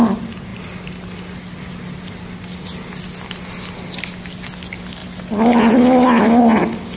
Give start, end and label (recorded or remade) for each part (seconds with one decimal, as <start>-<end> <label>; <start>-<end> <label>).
0.0-7.0 recorded